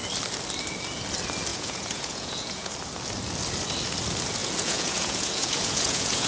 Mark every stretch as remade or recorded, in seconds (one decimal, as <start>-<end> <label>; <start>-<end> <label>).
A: 0.0-1.5 recorded; 1.5-2.7 remade; 2.7-4.4 recorded; 4.4-6.3 remade